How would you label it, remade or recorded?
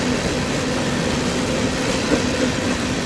recorded